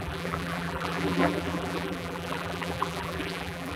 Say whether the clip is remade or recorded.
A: remade